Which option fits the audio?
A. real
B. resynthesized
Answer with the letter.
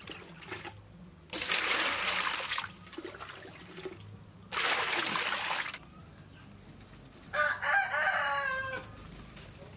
A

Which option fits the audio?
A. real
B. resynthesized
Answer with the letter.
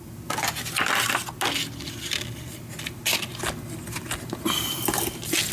A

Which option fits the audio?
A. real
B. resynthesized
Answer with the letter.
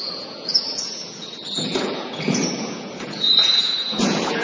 B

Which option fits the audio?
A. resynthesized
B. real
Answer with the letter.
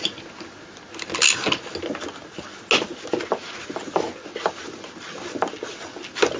B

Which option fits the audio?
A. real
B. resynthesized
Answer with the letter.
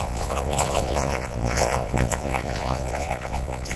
B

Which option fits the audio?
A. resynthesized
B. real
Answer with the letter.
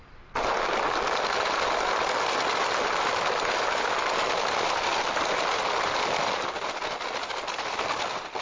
B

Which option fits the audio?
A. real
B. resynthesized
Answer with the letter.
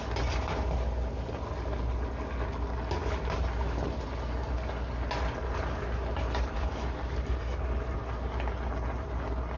A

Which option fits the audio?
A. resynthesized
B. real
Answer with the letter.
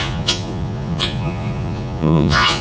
A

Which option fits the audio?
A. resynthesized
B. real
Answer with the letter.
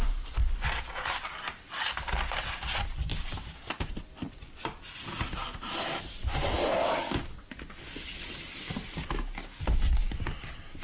B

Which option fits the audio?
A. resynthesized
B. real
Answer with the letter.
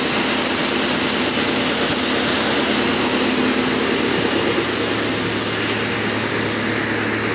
B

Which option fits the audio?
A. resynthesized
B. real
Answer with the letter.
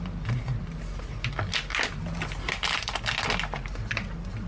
B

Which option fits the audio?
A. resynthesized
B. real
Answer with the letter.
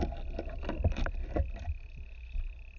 B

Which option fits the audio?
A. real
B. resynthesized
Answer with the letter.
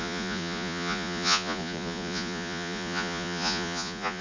B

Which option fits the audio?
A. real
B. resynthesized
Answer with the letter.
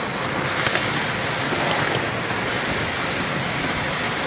A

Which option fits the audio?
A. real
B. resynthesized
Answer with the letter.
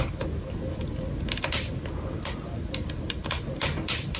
A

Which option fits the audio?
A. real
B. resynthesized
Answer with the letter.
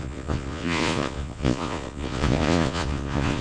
B